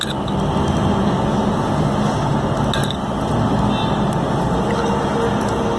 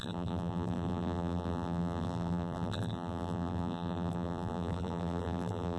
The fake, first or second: second